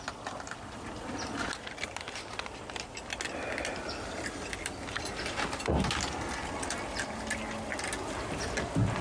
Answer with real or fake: real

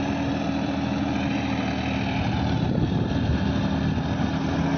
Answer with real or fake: real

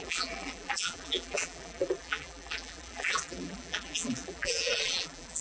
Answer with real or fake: fake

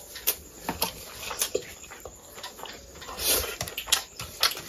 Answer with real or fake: real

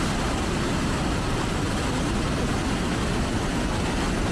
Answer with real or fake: real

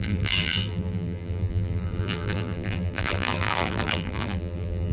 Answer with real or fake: fake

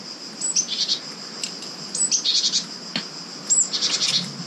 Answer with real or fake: real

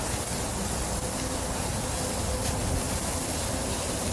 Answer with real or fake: real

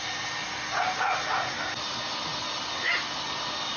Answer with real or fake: real